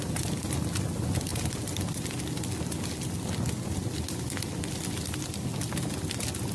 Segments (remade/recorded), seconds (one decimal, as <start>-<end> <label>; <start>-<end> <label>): 0.0-6.5 recorded